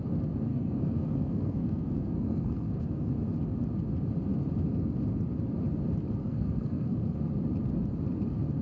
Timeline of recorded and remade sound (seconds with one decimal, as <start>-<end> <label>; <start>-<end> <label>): 0.0-0.5 recorded; 0.5-3.1 remade; 3.1-6.2 recorded; 6.2-7.2 remade; 7.2-8.6 recorded